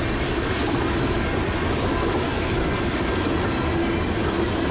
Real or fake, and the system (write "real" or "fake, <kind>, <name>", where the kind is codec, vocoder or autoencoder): real